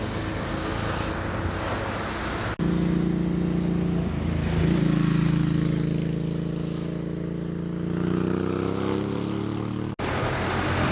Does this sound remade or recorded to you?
recorded